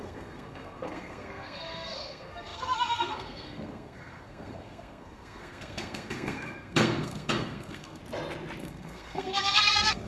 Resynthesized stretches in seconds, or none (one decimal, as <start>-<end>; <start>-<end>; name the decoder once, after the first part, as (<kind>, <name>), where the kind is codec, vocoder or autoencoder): 0.0-8.0 (codec, SNAC); 8.6-10.1